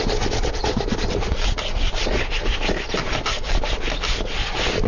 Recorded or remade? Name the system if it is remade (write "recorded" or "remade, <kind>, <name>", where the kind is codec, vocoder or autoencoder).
recorded